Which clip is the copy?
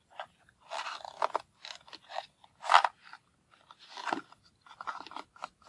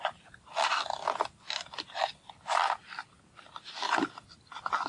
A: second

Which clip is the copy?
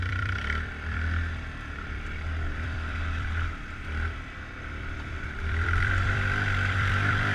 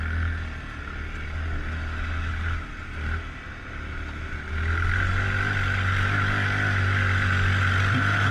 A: first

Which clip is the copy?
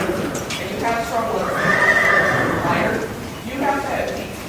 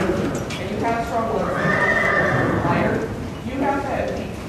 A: first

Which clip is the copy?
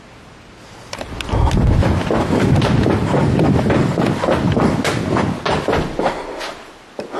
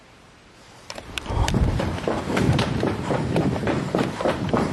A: second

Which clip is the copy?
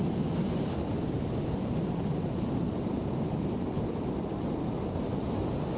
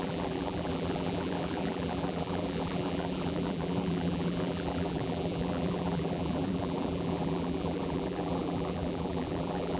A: second